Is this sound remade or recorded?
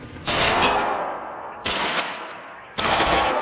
remade